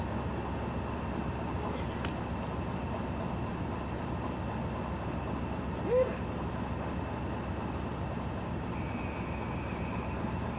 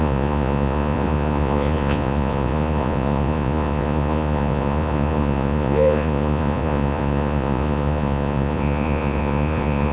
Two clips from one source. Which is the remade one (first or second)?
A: second